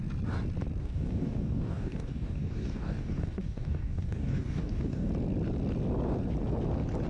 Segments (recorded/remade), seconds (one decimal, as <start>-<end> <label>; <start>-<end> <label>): 0.0-0.8 recorded; 0.8-5.1 remade; 5.1-7.1 recorded